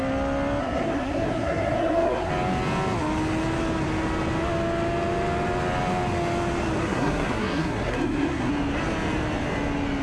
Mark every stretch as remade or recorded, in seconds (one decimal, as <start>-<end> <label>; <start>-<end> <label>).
0.0-0.6 recorded; 0.6-2.3 remade; 2.3-6.8 recorded; 6.8-8.5 remade; 8.5-10.0 recorded